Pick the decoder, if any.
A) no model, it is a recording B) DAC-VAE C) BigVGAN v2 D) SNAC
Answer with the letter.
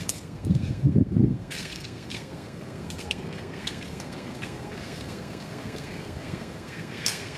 D